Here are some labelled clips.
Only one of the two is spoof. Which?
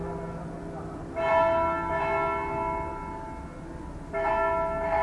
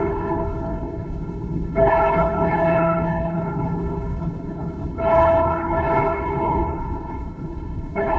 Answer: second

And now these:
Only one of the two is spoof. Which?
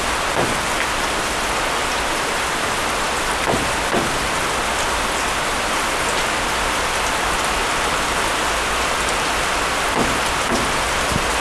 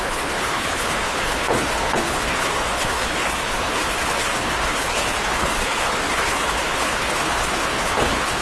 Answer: second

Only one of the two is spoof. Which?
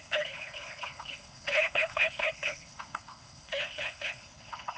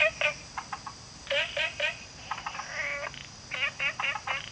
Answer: first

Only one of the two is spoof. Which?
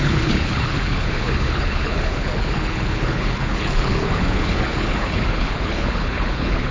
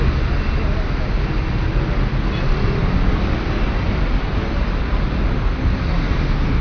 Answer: first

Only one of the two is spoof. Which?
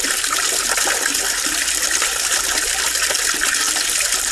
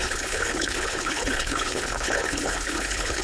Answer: second